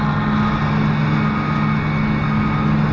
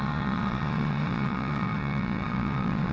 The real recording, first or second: first